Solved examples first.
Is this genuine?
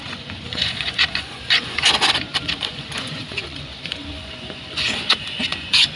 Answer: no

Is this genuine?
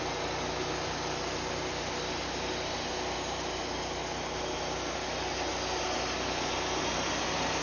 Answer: yes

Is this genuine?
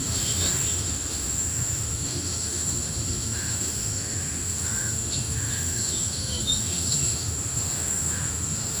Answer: no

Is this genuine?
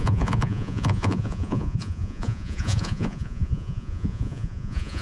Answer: no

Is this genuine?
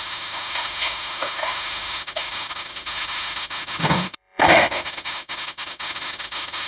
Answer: no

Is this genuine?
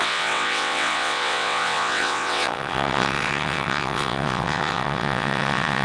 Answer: no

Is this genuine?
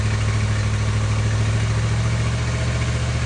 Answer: yes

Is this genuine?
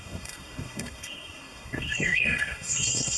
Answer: no